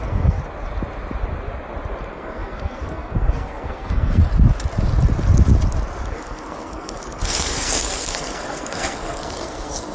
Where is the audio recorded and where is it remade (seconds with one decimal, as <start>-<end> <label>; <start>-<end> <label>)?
0.0-0.4 remade; 0.4-2.1 recorded; 2.1-4.2 remade; 4.2-6.1 recorded; 6.1-9.9 remade